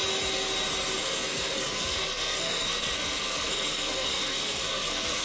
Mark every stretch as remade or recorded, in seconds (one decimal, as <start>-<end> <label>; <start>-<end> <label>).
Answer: 0.0-1.0 recorded; 1.0-5.2 remade